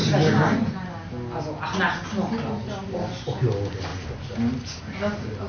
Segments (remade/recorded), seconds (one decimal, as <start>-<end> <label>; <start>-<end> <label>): 0.0-5.5 recorded